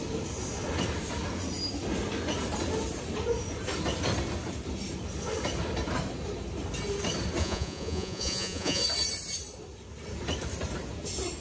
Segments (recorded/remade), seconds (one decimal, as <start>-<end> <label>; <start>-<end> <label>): 0.0-7.4 recorded; 7.4-8.8 remade; 8.8-11.4 recorded